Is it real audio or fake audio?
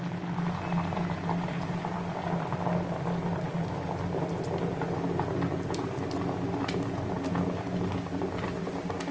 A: real